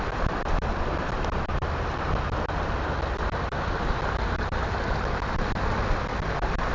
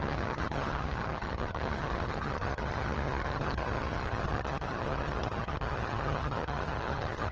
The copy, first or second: second